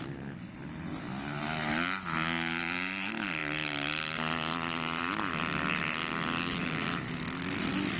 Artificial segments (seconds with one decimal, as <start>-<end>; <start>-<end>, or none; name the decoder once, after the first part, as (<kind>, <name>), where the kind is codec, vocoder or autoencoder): none